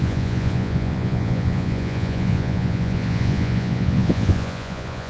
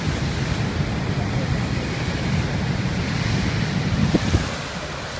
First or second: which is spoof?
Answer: first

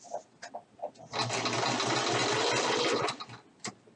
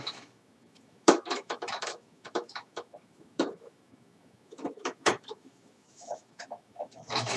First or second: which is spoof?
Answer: second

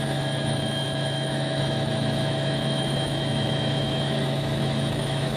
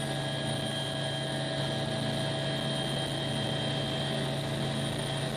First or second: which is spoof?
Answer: first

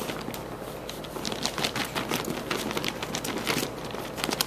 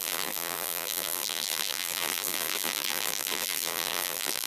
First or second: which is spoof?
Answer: second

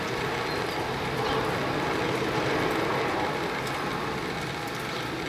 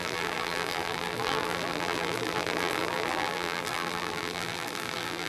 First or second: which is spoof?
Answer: second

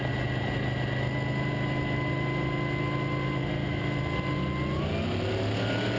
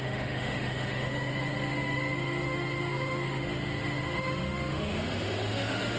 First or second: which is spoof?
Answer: second